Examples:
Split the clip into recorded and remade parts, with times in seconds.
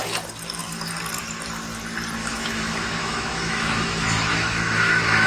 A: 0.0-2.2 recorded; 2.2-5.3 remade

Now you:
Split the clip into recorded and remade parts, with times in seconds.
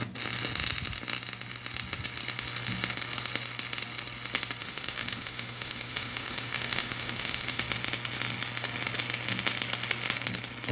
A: 0.0-4.6 recorded; 4.6-7.6 remade; 7.6-10.7 recorded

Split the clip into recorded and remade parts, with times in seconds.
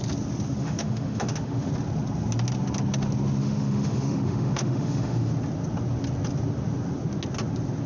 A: 0.0-0.6 recorded; 0.6-1.7 remade; 1.7-3.4 recorded; 3.4-5.3 remade; 5.3-7.9 recorded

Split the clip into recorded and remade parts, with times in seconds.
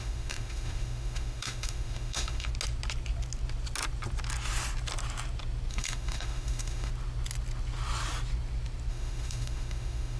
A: 0.0-2.5 remade; 2.5-5.7 recorded; 5.7-6.9 remade; 6.9-8.9 recorded; 8.9-10.2 remade